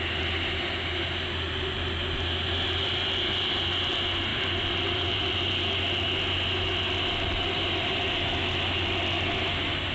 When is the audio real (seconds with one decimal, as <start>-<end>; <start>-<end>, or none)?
0.0-4.3; 5.5-9.9